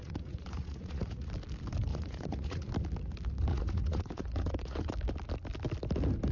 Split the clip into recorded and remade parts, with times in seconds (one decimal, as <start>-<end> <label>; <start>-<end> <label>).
0.0-1.3 remade; 1.3-1.9 recorded; 1.9-2.7 remade; 2.7-3.5 recorded; 3.5-4.9 remade; 4.9-6.3 recorded